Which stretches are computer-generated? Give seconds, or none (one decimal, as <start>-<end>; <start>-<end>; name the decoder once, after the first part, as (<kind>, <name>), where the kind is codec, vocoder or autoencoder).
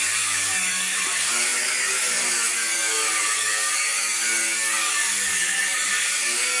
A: 0.0-6.6 (codec, DAC)